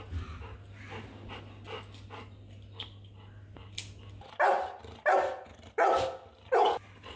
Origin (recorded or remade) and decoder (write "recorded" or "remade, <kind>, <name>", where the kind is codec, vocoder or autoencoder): recorded